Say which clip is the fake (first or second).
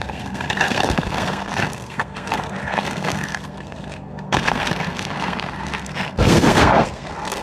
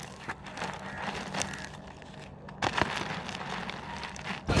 first